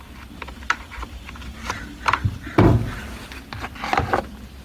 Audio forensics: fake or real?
real